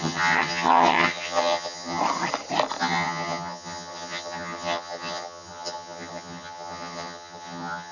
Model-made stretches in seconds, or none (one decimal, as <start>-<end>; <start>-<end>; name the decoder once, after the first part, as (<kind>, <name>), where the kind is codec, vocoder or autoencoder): 0.0-2.0 (vocoder, HiFi-GAN); 2.8-7.9